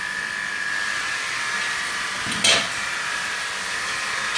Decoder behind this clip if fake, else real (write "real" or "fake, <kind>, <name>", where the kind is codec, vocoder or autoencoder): real